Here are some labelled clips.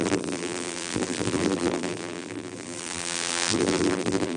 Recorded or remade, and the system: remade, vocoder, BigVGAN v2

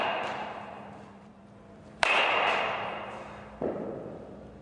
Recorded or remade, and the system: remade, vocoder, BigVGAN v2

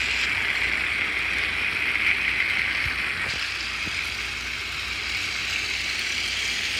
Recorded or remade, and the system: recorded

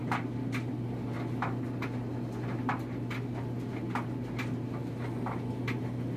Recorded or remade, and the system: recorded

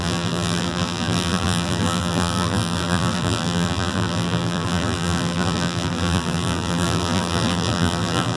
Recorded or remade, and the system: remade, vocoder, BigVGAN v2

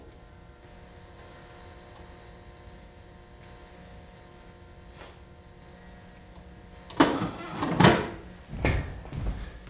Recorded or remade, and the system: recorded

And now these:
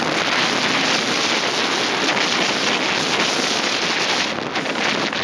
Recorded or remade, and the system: recorded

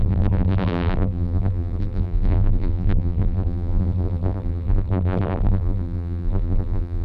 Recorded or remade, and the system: remade, vocoder, BigVGAN v2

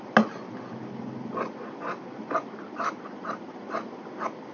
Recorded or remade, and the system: recorded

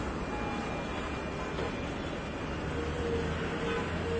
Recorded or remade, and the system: recorded